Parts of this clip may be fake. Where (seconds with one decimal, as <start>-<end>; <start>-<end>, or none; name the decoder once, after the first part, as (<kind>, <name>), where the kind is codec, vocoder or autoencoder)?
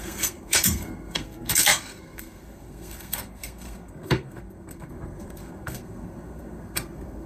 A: 0.0-7.3 (codec, SNAC)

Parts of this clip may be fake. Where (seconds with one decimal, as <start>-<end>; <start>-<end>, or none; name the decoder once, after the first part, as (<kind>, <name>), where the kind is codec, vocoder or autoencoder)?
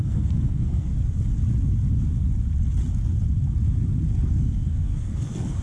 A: 0.0-0.9 (codec, SNAC); 4.3-5.6